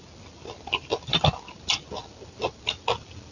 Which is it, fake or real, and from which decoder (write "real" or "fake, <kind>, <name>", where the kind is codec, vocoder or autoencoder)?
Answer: real